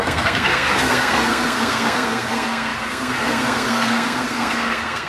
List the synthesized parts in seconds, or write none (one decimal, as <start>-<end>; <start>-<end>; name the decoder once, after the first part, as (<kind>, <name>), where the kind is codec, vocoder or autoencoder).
0.0-5.1 (codec, SNAC)